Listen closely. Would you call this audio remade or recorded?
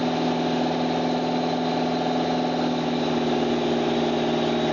recorded